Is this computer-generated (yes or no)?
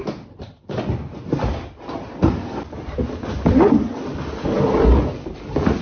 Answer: no